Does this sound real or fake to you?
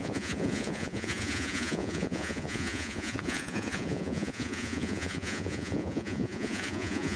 fake